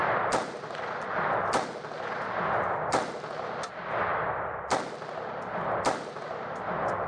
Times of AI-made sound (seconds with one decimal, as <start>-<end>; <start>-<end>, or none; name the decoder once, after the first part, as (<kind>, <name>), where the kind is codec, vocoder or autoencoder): 0.0-1.1 (vocoder, BigVGAN v2)